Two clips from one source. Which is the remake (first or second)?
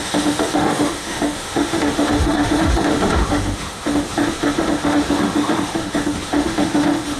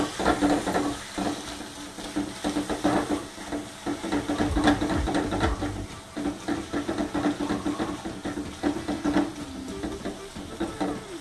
first